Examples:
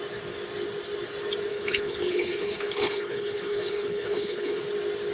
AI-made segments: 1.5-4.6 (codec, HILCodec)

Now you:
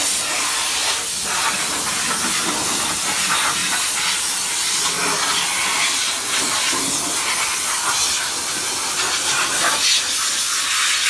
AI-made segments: none

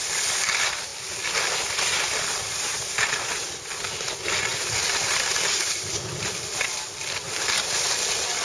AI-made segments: none